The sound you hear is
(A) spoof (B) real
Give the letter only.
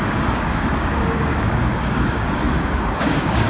A